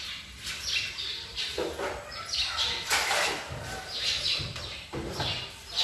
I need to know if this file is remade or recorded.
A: recorded